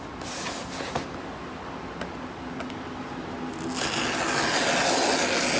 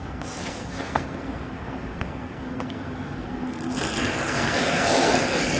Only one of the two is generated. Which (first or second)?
second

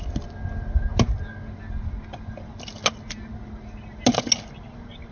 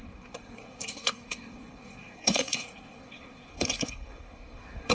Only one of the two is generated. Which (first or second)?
second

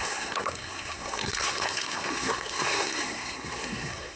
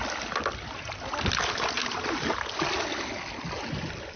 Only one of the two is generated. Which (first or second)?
first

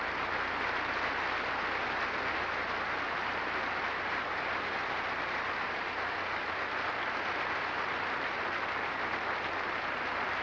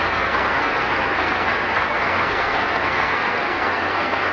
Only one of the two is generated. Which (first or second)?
second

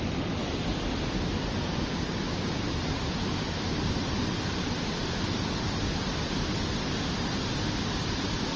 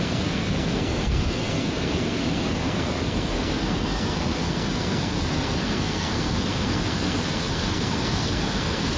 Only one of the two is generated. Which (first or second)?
second